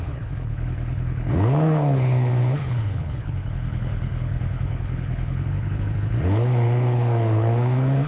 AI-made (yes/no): yes